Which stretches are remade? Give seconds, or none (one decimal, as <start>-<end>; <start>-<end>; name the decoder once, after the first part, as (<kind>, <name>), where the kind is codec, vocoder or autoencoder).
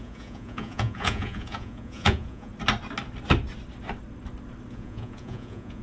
0.0-2.5 (vocoder, Vocos); 4.7-5.8